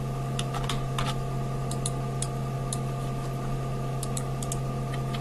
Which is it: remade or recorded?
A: recorded